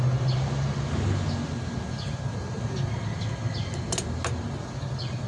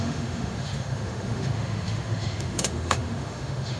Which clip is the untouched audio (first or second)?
first